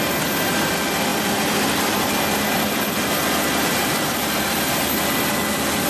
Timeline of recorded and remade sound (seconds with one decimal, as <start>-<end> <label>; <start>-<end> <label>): 0.0-1.1 recorded; 1.1-4.6 remade; 4.6-5.9 recorded